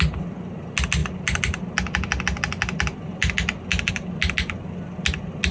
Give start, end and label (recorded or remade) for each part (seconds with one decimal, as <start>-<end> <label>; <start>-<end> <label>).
0.0-5.5 recorded